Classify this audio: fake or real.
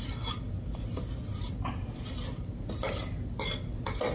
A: real